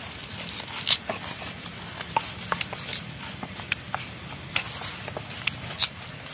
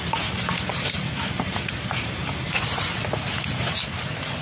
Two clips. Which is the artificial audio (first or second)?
second